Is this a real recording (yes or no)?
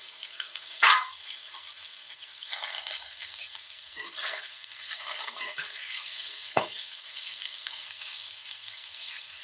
no